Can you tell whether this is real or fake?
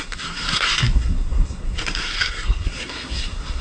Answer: fake